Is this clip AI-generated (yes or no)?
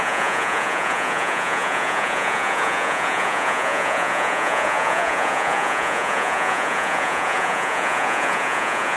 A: yes